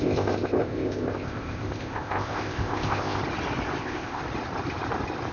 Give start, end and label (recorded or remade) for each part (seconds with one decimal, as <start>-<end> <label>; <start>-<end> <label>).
0.0-3.2 remade; 3.2-3.8 recorded; 3.8-4.2 remade; 4.2-5.3 recorded

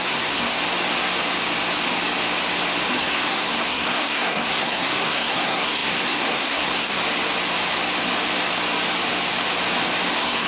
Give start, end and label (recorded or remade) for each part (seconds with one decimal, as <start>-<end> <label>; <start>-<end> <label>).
0.0-0.6 remade; 0.6-3.0 recorded; 3.0-7.0 remade; 7.0-10.1 recorded; 10.1-10.5 remade

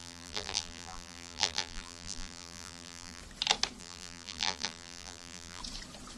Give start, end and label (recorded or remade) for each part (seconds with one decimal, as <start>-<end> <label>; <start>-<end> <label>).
0.0-3.2 remade; 3.2-3.8 recorded; 3.8-5.6 remade; 5.6-6.2 recorded

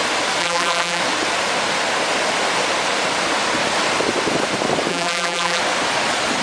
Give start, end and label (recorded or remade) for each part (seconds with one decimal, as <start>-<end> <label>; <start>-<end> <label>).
0.0-0.4 recorded; 0.4-1.0 remade; 1.0-4.9 recorded; 4.9-5.6 remade; 5.6-6.4 recorded

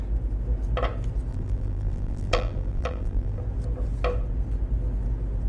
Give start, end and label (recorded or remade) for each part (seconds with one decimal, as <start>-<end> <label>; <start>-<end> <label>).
0.0-1.3 recorded; 1.3-3.4 remade; 3.4-5.5 recorded

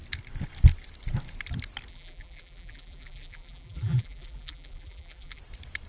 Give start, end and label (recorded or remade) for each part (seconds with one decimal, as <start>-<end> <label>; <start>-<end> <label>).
0.0-1.9 recorded; 1.9-5.4 remade; 5.4-5.9 recorded

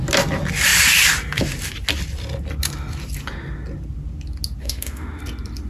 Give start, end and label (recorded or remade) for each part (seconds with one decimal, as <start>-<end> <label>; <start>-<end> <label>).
0.0-4.6 recorded; 4.6-5.2 remade; 5.2-5.7 recorded